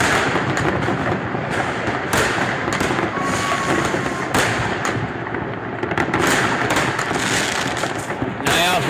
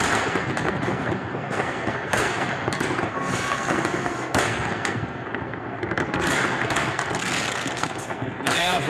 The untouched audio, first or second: first